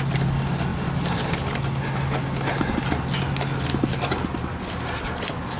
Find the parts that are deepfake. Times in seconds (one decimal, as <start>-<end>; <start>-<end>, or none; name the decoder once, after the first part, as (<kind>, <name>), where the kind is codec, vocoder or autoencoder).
none